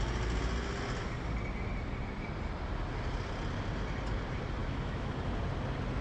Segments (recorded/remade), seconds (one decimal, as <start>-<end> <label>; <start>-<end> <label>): 0.0-4.6 recorded; 4.6-5.1 remade; 5.1-6.0 recorded